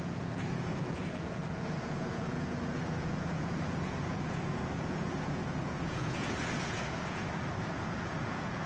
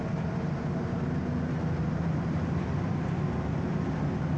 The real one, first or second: second